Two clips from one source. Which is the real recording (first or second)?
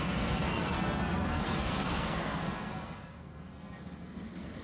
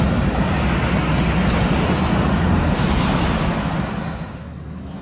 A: second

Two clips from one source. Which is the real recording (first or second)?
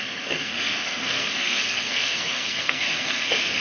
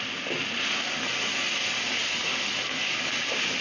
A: second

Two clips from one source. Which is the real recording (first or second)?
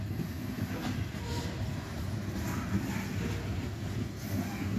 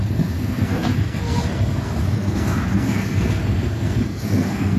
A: first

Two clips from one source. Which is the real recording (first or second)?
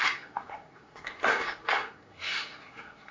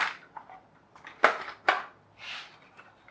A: second